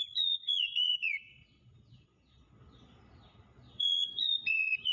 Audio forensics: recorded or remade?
remade